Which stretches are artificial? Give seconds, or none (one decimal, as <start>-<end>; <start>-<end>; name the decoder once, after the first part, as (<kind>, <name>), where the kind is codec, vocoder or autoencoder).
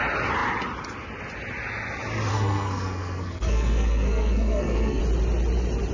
2.3-5.0 (codec, SNAC)